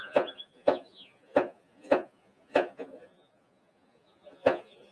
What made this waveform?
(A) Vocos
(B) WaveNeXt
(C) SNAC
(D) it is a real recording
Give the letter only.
A